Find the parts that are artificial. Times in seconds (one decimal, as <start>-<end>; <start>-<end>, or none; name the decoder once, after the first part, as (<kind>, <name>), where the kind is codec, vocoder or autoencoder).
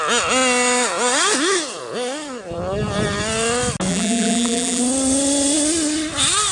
3.9-4.8 (vocoder, BigVGAN v2)